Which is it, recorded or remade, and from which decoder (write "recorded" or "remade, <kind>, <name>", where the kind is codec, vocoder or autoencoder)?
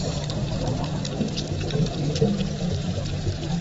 remade, vocoder, BigVGAN v2